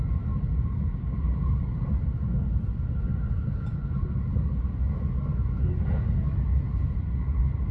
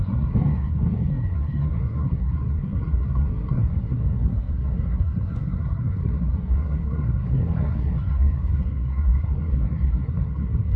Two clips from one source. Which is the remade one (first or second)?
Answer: second